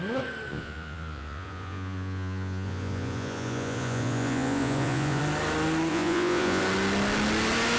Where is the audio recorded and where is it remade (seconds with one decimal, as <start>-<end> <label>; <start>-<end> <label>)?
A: 0.0-0.5 recorded; 0.5-5.2 remade; 5.2-5.9 recorded; 5.9-6.6 remade; 6.6-7.8 recorded

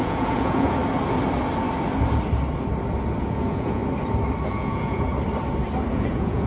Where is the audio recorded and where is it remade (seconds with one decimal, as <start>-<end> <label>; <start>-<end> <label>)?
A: 0.0-0.8 remade; 0.8-3.2 recorded; 3.2-3.8 remade; 3.8-4.5 recorded; 4.5-5.1 remade; 5.1-5.9 recorded; 5.9-6.5 remade

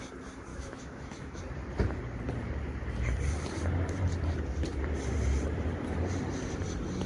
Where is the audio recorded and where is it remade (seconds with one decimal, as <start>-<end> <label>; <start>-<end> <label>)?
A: 0.0-0.5 recorded; 0.5-1.4 remade; 1.4-7.1 recorded